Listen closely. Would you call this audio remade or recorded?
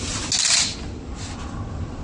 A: recorded